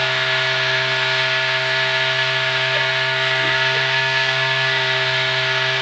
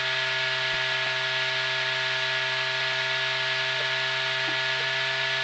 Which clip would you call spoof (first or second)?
first